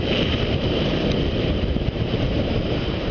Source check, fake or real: fake